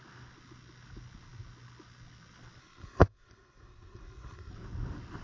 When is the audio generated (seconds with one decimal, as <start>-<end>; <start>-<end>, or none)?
2.6-4.5